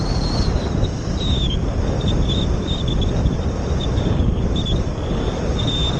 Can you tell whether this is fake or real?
real